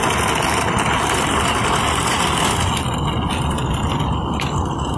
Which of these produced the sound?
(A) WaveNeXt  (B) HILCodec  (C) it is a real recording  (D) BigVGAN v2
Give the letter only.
C